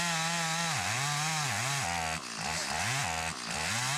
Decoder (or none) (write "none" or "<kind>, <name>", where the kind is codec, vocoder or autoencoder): none